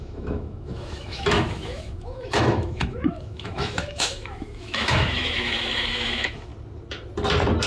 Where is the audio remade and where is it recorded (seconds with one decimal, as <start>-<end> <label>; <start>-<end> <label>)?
0.0-6.5 remade; 6.5-7.7 recorded